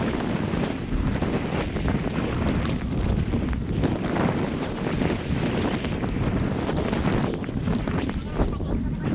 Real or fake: real